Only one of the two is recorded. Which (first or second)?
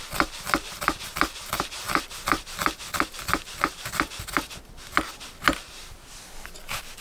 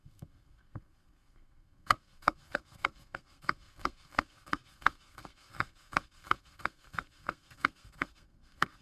first